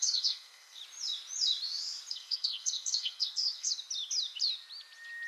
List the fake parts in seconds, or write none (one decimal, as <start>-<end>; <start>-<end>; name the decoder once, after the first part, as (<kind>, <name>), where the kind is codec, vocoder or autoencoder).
0.0-0.8 (codec, SNAC); 2.1-3.7